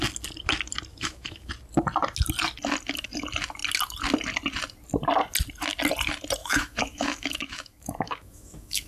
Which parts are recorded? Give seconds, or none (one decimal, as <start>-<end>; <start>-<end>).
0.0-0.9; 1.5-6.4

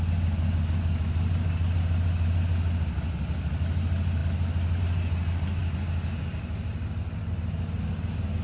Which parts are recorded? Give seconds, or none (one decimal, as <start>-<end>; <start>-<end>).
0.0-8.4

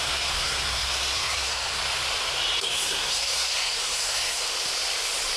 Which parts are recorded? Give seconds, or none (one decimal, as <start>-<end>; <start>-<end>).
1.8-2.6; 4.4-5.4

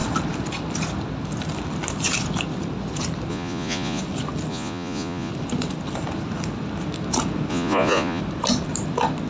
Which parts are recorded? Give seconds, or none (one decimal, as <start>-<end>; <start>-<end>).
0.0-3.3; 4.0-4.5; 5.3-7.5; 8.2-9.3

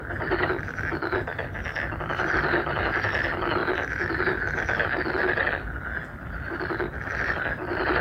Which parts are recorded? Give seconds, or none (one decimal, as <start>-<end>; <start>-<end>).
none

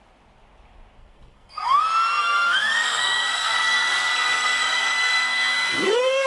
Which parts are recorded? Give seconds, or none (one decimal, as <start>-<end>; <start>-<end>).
0.0-1.0; 1.8-2.2

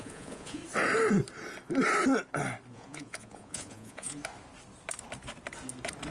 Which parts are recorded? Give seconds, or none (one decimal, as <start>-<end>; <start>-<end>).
0.6-2.7; 4.2-6.1